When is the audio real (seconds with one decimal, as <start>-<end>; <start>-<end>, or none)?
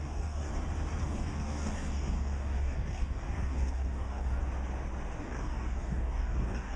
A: 0.5-1.0; 4.4-5.2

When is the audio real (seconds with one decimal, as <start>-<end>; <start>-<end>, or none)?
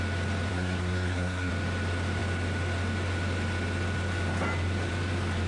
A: 0.0-0.5; 1.5-5.5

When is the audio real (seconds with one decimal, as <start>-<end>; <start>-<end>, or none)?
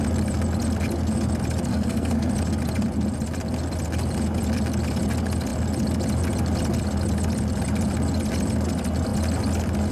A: 0.0-1.7; 2.3-9.9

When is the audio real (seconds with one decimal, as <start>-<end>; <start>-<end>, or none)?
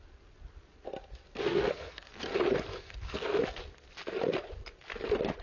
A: 0.0-1.4; 2.1-2.7; 3.6-5.4